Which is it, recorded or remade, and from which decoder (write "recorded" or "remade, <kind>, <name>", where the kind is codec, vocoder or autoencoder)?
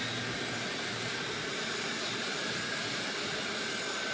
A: recorded